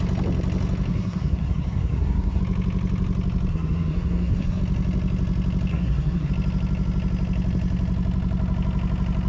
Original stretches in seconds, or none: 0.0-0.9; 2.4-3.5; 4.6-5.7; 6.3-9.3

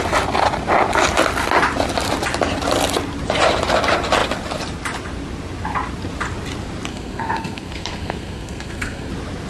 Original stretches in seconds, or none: 0.0-6.9; 9.1-9.5

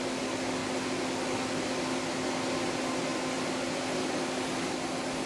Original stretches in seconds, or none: 0.0-5.3

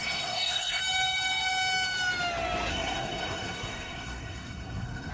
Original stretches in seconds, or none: 0.8-2.7